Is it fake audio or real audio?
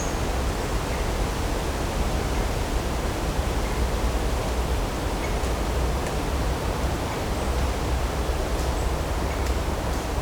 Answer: real